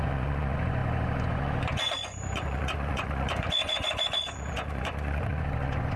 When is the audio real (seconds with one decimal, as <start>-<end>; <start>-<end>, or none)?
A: none